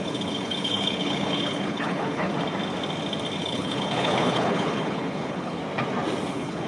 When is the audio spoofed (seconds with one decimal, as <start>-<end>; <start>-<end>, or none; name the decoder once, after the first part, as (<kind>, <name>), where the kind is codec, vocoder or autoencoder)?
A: 0.0-2.3 (codec, HILCodec); 3.4-5.6; 6.3-6.7